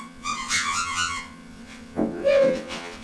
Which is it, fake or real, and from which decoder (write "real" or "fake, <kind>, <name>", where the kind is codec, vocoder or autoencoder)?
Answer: fake, vocoder, WaveNeXt